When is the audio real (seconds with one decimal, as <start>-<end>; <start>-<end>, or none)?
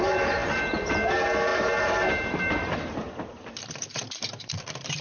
none